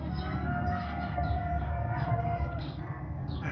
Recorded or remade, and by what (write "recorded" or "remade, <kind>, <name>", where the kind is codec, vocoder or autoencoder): remade, codec, SNAC